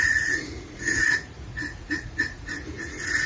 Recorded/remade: remade